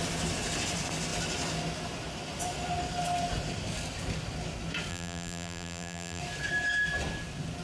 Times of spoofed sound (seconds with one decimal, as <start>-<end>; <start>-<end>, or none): 4.9-6.2